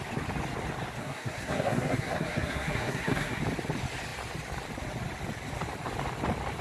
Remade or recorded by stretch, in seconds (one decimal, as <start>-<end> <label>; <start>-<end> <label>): 0.0-1.0 recorded; 1.0-3.4 remade; 3.4-6.6 recorded